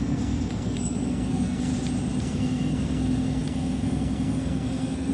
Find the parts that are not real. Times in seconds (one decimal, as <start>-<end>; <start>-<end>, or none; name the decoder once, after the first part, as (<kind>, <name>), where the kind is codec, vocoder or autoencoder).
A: 0.0-1.7 (codec, SNAC); 2.2-5.1